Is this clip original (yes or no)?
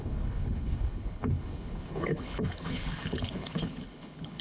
no